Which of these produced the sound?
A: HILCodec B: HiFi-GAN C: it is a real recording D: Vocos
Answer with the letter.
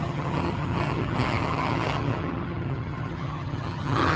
B